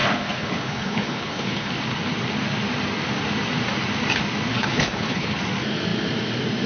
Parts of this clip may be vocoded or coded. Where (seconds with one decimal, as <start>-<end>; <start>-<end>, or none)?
0.0-1.7; 4.5-5.4